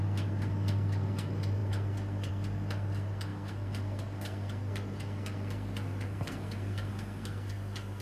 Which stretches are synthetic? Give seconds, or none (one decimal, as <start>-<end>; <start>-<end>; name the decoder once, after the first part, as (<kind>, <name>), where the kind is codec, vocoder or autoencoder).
0.0-8.0 (codec, SNAC)